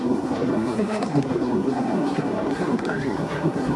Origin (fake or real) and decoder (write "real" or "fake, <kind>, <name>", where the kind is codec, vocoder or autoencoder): fake, codec, SNAC